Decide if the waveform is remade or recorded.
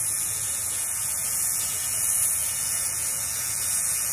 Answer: remade